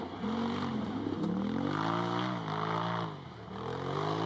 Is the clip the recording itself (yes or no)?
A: yes